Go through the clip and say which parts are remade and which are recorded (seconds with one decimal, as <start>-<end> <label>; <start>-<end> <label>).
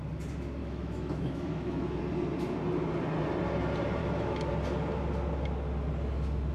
0.0-0.6 recorded; 0.6-2.0 remade; 2.0-4.0 recorded; 4.0-4.5 remade; 4.5-6.5 recorded